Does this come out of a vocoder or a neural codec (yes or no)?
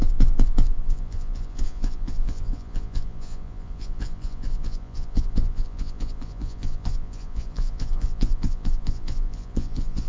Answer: yes